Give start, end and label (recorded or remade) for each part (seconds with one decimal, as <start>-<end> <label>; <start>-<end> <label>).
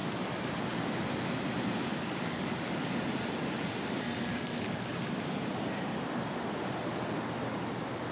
0.0-1.9 recorded; 1.9-3.0 remade; 3.0-4.3 recorded; 4.3-5.0 remade; 5.0-8.1 recorded